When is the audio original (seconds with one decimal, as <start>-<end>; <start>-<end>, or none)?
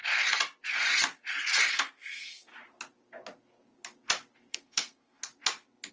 0.0-1.7; 2.5-4.5; 5.2-5.9